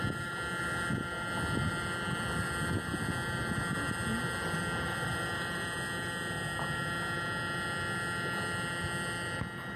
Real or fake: real